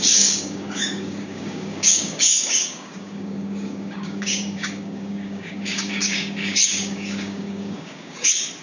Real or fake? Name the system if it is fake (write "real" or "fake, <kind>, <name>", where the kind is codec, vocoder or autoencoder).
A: fake, codec, DAC